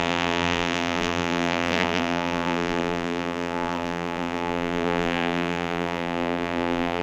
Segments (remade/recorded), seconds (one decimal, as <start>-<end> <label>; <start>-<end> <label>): 0.0-7.0 remade

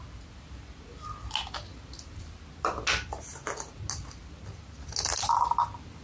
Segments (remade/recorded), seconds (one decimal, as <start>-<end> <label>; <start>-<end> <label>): 0.0-6.0 recorded

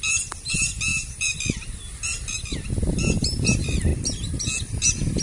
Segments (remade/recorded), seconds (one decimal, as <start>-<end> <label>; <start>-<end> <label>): 0.0-5.2 recorded

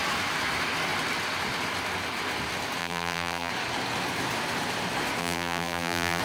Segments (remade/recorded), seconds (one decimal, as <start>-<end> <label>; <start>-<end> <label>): 0.0-2.8 recorded; 2.8-3.5 remade; 3.5-5.2 recorded; 5.2-6.2 remade